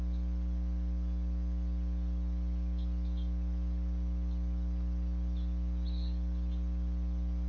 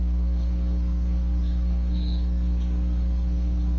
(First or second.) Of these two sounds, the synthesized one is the second